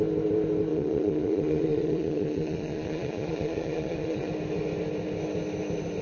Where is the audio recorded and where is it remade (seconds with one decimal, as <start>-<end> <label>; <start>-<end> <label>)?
0.0-0.7 recorded; 0.7-4.3 remade; 4.3-6.0 recorded